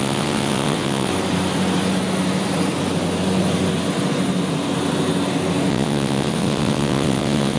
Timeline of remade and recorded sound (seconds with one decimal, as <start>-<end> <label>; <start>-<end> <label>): 0.0-1.1 remade; 1.1-5.7 recorded; 5.7-7.6 remade

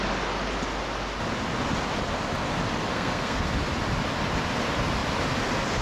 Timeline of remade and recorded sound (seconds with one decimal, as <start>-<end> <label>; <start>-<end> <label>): 0.0-2.9 recorded; 2.9-3.5 remade; 3.5-5.8 recorded

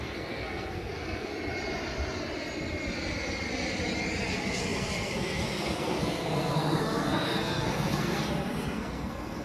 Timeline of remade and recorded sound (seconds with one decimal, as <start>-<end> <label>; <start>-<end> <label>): 0.0-1.3 remade; 1.3-4.3 recorded; 4.3-9.4 remade

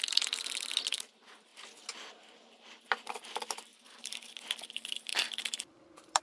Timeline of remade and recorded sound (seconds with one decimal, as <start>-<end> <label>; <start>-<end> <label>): 0.0-3.7 recorded; 3.7-4.3 remade; 4.3-5.1 recorded; 5.1-6.2 remade

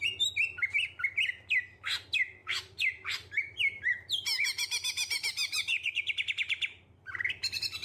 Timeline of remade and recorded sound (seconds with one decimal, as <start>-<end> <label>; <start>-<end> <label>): 0.0-2.4 recorded; 2.4-6.0 remade; 6.0-6.4 recorded; 6.4-7.1 remade; 7.1-7.8 recorded